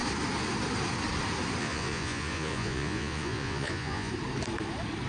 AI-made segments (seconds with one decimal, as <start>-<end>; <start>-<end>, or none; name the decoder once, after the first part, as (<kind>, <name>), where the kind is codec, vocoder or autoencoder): 1.6-4.1 (vocoder, Vocos)